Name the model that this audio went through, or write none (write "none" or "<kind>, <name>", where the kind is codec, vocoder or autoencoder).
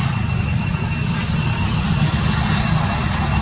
none